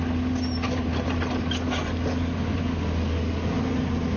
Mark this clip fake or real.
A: real